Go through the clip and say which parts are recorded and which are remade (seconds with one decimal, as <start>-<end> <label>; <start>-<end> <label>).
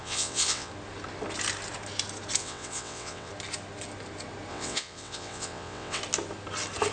0.0-0.7 remade; 0.7-2.4 recorded; 2.4-3.3 remade; 3.3-4.5 recorded; 4.5-6.0 remade; 6.0-6.9 recorded